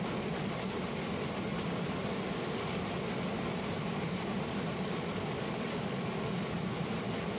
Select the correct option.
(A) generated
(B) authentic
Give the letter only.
B